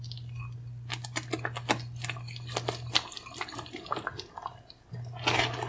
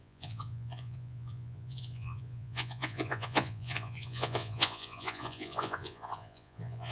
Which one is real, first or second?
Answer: first